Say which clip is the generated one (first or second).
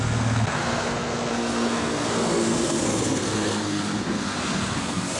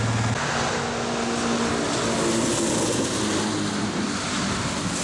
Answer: first